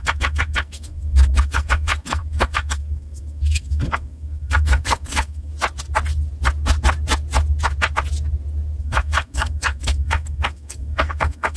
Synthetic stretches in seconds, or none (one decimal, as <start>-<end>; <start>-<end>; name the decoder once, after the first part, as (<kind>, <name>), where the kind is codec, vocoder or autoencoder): 0.0-5.5 (codec, SNAC); 8.8-11.6